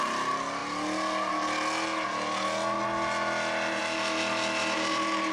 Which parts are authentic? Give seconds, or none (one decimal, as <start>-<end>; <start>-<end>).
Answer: 0.0-5.3